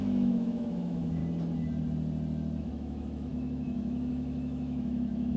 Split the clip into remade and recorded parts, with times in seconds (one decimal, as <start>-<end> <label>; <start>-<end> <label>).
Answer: 0.0-1.2 remade; 1.2-2.6 recorded; 2.6-5.4 remade